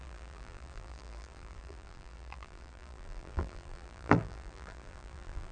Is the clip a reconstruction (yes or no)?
yes